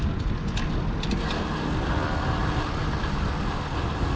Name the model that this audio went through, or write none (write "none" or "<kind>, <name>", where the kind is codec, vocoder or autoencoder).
none